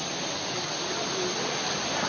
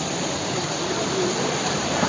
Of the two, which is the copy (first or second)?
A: second